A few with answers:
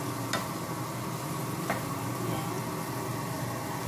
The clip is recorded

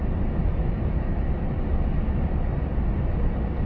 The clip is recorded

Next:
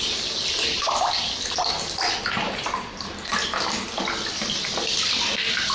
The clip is remade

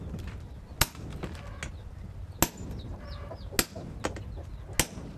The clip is recorded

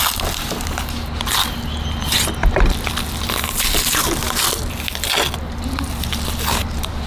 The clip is recorded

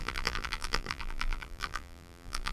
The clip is remade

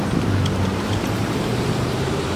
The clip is remade